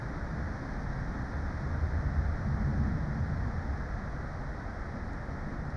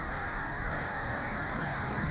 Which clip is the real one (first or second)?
first